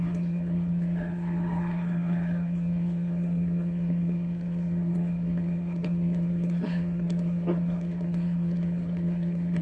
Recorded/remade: remade